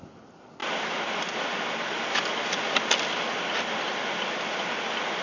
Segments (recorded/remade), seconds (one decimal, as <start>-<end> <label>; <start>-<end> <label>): 0.0-5.2 recorded